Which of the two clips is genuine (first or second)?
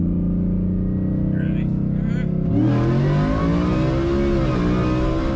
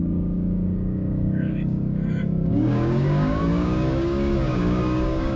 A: first